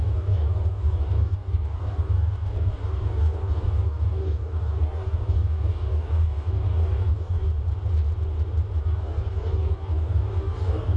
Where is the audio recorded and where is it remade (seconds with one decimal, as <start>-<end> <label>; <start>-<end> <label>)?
0.0-7.5 remade; 7.5-8.8 recorded; 8.8-11.0 remade